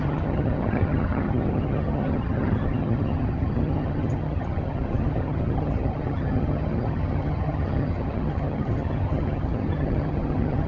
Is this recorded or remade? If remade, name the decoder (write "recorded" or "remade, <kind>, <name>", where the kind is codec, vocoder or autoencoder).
remade, vocoder, HiFi-GAN